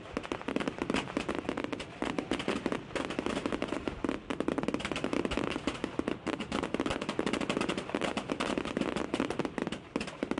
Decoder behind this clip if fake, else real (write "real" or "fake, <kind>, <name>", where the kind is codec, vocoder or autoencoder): real